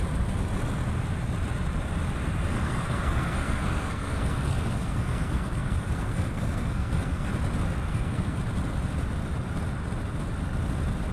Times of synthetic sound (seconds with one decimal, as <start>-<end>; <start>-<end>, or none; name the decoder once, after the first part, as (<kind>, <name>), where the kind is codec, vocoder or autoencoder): 2.5-7.3 (codec, SNAC); 7.9-8.4